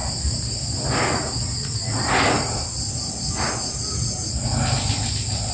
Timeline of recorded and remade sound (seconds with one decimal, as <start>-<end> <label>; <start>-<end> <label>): 0.0-5.5 recorded